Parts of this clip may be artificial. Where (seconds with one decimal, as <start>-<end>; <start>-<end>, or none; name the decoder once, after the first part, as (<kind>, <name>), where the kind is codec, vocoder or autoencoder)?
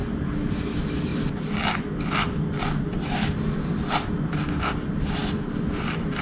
none